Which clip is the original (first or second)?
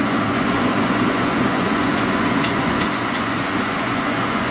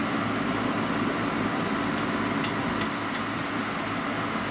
second